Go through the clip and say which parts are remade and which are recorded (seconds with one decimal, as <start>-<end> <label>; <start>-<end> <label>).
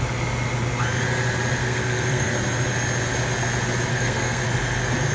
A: 0.0-1.6 recorded; 1.6-2.3 remade; 2.3-3.9 recorded; 3.9-4.4 remade; 4.4-5.1 recorded